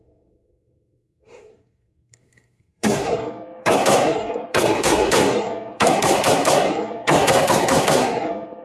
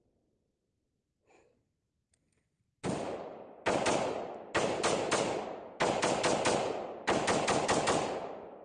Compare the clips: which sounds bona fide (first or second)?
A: second